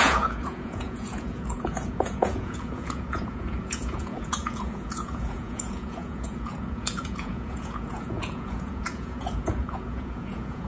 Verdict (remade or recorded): remade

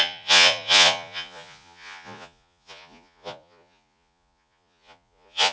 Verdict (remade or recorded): remade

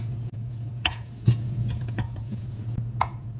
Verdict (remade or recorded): remade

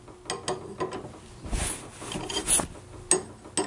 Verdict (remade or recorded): recorded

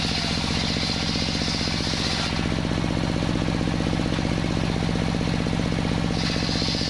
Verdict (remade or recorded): recorded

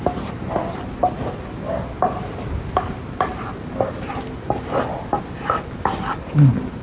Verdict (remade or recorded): recorded